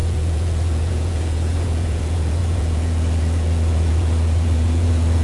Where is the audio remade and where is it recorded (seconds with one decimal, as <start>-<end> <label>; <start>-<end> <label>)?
0.0-5.2 remade